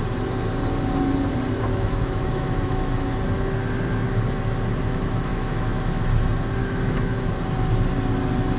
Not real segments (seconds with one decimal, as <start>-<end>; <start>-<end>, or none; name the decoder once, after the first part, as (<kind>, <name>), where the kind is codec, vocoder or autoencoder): 1.7-3.2 (autoencoder, DAC-VAE); 5.3-6.0; 6.6-7.3